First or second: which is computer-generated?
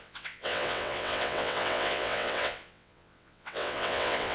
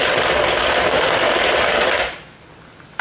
first